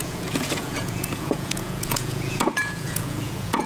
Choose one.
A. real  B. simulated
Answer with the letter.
B